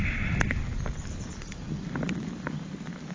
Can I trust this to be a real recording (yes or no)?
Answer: yes